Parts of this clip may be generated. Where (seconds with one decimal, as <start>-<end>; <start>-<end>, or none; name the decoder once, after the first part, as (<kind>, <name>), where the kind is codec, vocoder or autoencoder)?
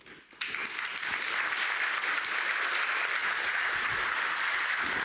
3.2-4.1 (vocoder, BigVGAN v2)